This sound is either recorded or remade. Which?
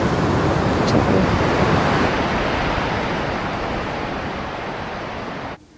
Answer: recorded